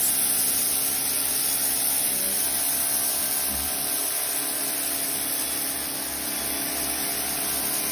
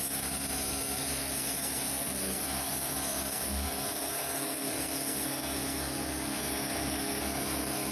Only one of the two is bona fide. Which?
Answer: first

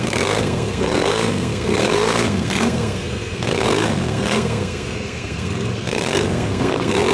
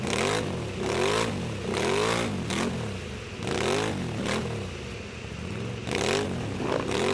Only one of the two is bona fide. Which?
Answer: second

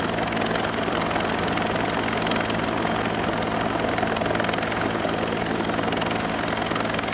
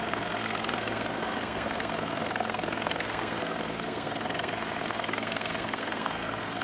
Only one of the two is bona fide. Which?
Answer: first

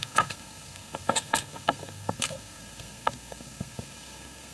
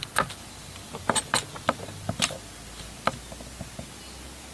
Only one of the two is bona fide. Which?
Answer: second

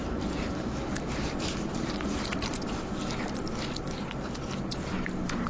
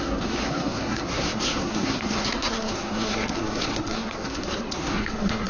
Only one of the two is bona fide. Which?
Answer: first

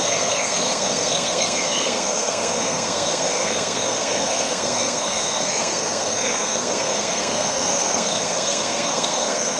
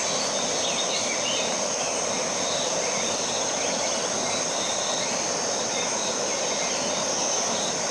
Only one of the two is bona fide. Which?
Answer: second